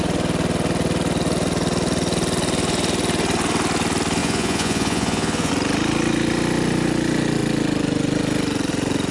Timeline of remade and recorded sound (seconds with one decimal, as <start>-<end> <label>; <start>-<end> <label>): 0.0-4.2 recorded; 4.2-5.5 remade; 5.5-9.1 recorded